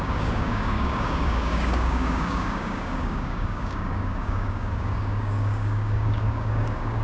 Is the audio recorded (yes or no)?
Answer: no